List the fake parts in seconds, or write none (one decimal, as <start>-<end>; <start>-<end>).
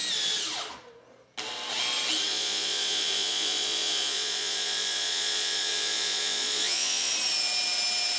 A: 2.3-7.1